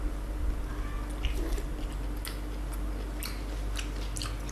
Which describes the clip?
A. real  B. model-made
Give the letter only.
A